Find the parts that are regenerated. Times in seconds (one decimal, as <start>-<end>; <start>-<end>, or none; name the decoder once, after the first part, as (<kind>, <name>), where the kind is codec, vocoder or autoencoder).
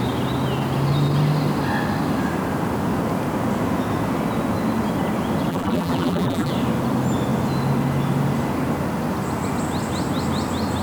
5.5-6.5 (vocoder, BigVGAN v2)